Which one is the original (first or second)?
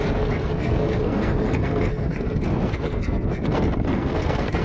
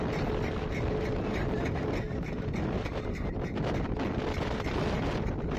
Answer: second